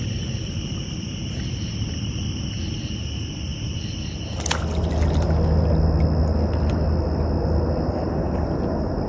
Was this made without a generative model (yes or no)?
yes